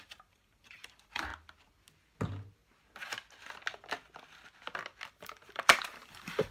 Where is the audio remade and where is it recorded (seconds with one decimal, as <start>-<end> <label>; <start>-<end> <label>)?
0.0-1.3 remade; 1.3-5.1 recorded; 5.1-6.5 remade